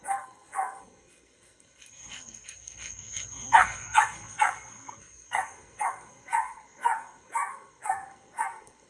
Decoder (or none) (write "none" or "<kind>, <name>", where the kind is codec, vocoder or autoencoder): codec, SNAC